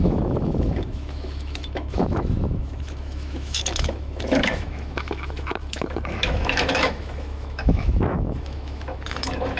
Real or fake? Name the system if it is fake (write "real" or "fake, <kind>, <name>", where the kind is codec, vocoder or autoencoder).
fake, autoencoder, DAC-VAE